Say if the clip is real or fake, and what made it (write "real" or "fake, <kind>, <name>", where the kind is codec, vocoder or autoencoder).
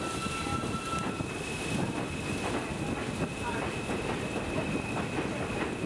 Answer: real